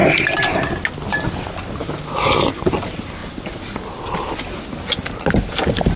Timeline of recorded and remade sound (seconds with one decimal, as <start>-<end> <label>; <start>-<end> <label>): 0.0-6.0 recorded